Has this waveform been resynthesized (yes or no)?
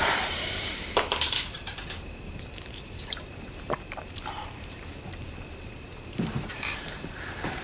yes